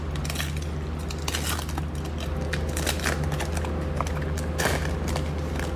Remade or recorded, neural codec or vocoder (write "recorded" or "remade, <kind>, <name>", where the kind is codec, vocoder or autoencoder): recorded